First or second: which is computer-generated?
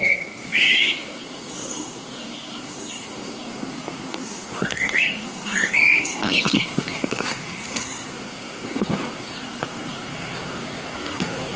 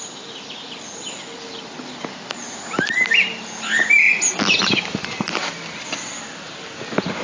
first